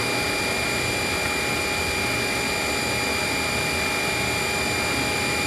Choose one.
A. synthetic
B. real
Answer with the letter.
B